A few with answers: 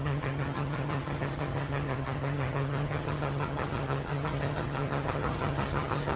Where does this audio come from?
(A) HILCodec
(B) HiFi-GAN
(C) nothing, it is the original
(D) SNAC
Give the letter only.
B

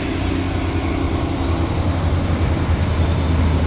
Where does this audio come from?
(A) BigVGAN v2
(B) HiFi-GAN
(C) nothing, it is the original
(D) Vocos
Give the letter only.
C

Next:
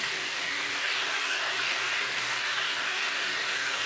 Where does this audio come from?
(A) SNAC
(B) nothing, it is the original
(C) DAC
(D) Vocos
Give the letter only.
C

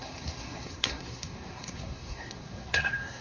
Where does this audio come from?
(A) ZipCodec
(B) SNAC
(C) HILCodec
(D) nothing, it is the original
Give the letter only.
B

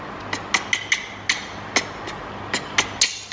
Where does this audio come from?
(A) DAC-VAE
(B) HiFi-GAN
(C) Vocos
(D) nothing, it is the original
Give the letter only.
D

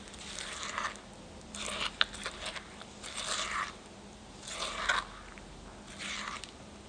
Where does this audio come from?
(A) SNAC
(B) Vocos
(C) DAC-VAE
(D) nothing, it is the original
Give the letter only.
D